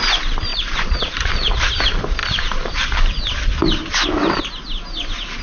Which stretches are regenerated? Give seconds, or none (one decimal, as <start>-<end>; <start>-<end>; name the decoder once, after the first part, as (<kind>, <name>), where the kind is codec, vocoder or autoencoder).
0.5-1.3 (vocoder, BigVGAN v2); 2.2-3.5